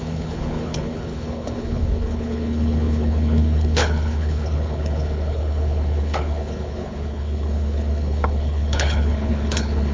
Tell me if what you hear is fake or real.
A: fake